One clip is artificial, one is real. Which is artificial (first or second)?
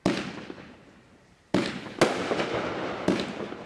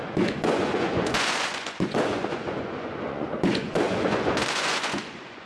second